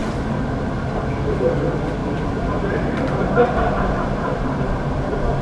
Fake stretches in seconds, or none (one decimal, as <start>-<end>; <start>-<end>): 0.0-1.1; 2.0-5.4